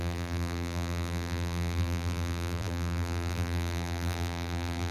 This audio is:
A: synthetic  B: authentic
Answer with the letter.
A